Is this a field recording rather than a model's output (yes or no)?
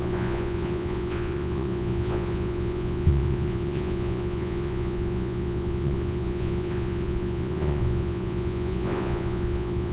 no